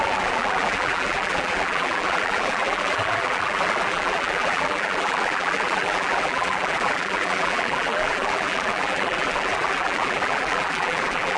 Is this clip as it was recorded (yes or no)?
no